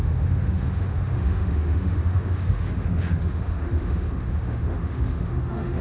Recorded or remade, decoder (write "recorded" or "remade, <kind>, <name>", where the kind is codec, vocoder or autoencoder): remade, autoencoder, DAC-VAE